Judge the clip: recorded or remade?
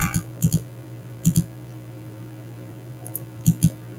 remade